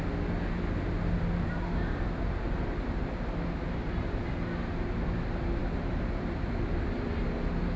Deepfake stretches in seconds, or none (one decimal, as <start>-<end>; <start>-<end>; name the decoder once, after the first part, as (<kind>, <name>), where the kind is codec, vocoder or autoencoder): none